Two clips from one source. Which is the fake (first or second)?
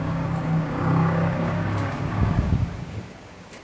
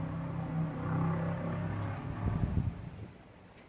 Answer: first